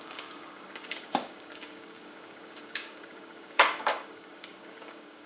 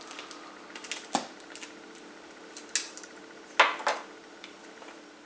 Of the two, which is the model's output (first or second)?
first